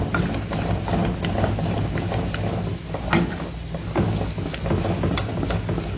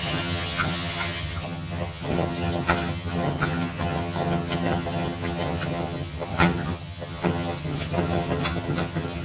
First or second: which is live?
first